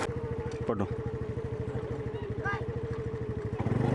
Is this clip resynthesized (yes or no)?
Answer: no